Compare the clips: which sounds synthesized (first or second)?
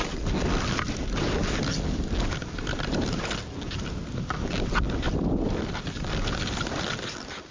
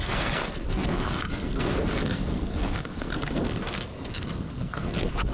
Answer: second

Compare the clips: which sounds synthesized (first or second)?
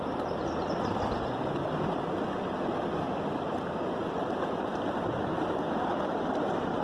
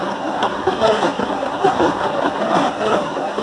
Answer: second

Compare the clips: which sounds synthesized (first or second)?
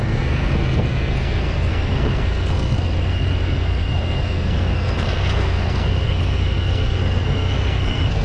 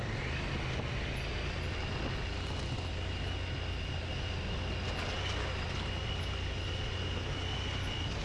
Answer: first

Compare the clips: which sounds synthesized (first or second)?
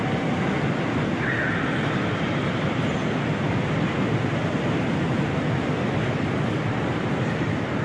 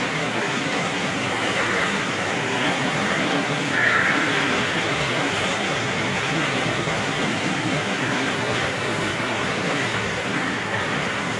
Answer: second